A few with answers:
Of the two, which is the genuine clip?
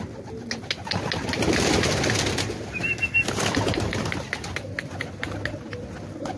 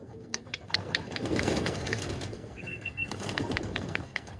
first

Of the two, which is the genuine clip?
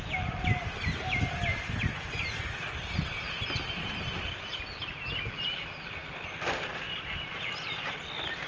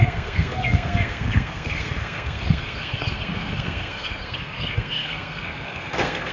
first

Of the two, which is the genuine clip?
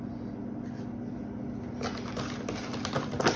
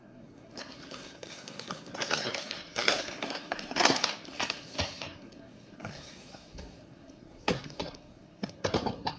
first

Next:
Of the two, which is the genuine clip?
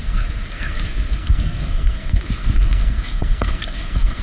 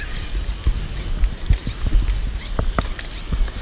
second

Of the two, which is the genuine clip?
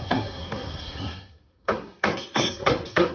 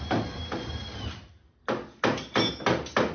second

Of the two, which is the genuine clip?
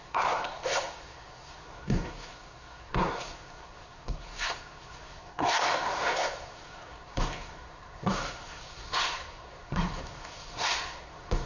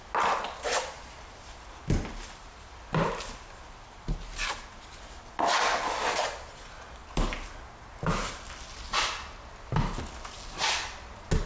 second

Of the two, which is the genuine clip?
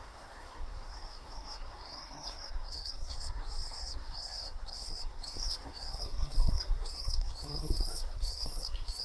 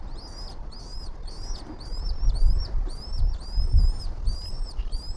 second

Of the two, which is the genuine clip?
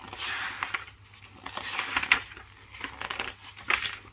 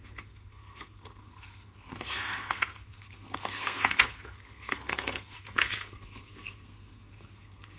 first